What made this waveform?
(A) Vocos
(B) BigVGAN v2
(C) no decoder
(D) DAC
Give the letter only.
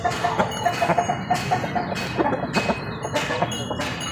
C